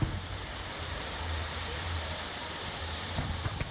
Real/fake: fake